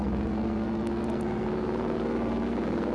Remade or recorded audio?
remade